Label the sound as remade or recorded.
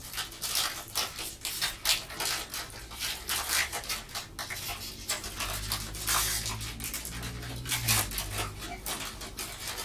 recorded